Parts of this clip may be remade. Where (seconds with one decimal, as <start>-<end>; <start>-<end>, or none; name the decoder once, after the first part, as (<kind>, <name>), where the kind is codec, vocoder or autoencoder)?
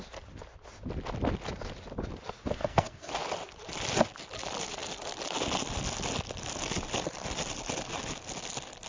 2.6-3.1 (codec, SNAC)